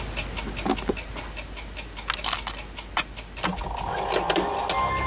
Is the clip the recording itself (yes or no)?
yes